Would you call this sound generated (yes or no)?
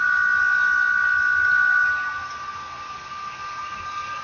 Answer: no